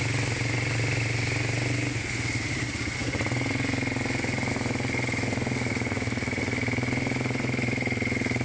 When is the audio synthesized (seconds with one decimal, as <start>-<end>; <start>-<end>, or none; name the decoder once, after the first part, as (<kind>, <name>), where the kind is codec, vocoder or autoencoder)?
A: none